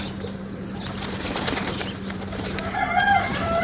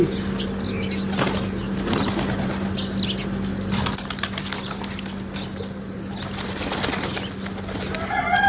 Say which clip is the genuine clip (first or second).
second